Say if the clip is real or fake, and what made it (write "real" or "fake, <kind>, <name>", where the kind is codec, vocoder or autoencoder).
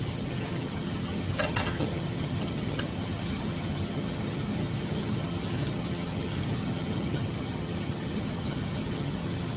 fake, vocoder, HiFi-GAN